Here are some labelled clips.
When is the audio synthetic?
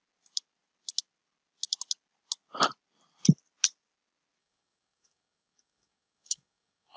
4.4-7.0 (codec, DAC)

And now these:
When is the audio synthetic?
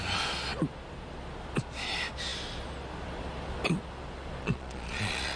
4.4-5.4 (vocoder, Vocos)